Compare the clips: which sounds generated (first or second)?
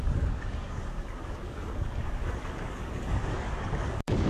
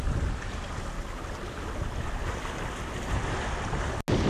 first